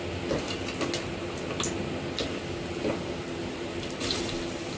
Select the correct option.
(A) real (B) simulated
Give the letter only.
A